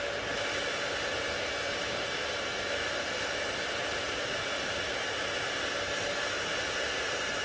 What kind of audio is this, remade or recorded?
recorded